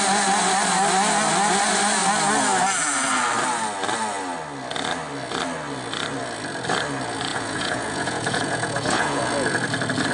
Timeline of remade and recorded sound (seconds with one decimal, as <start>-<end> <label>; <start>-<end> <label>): 0.0-7.3 recorded; 7.3-9.2 remade; 9.2-10.1 recorded